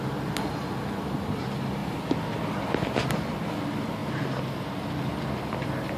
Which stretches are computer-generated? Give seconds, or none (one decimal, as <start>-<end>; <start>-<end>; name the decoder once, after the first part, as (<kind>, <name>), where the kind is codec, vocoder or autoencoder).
4.0-6.0 (vocoder, BigVGAN v2)

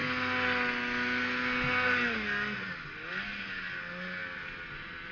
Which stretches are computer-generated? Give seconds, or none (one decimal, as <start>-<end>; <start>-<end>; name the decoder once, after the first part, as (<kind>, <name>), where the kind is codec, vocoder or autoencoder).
none

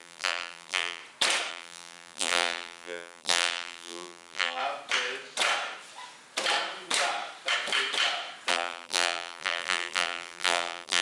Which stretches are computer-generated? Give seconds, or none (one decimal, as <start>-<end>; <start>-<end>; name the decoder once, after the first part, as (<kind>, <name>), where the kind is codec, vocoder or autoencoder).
0.0-1.0 (vocoder, BigVGAN v2); 1.5-4.6; 8.5-11.0

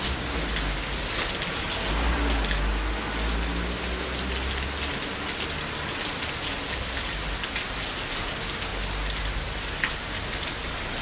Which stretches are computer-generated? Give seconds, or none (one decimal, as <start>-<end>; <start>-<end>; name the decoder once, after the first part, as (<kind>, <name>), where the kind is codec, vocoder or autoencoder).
none

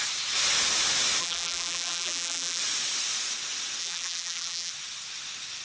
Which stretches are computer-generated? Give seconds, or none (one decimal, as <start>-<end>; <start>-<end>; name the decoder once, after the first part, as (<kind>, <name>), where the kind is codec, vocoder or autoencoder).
1.2-2.6 (vocoder, BigVGAN v2); 3.8-4.7

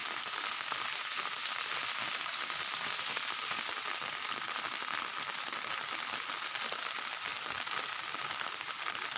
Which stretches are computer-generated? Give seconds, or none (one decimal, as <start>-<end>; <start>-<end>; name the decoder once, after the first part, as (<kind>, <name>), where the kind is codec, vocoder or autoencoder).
none

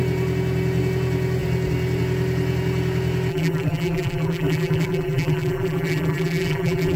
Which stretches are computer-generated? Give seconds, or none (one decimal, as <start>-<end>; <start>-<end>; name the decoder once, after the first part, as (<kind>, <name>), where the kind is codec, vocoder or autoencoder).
3.3-7.0 (vocoder, BigVGAN v2)

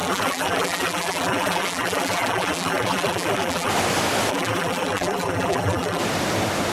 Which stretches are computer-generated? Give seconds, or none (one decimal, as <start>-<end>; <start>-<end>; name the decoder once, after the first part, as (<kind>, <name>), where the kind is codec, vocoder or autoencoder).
0.0-3.7 (vocoder, BigVGAN v2); 4.3-6.0